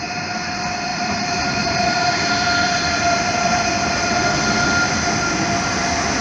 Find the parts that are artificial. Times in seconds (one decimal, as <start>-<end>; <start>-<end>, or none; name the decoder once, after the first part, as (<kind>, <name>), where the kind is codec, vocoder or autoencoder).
0.9-1.9 (vocoder, BigVGAN v2)